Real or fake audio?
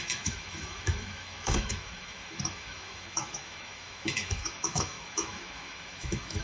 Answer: fake